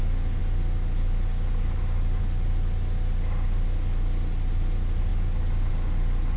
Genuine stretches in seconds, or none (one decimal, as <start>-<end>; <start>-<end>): 0.0-6.4